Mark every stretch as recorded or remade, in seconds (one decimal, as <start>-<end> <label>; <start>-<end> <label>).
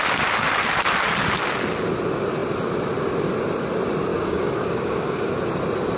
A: 0.0-4.1 recorded; 4.1-5.3 remade; 5.3-6.0 recorded